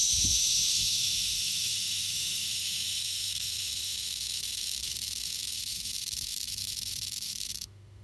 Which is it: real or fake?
fake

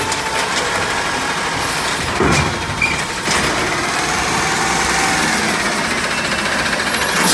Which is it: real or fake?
real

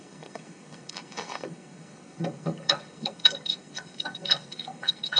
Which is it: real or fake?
fake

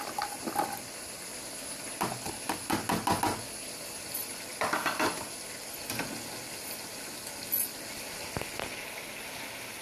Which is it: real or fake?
real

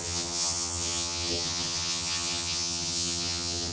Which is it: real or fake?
fake